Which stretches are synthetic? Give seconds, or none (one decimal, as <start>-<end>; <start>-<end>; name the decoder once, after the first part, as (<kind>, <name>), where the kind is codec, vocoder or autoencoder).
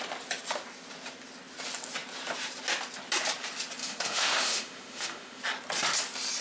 3.8-5.4 (autoencoder, DAC-VAE)